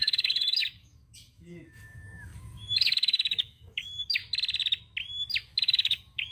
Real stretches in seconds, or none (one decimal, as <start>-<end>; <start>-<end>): 4.2-5.4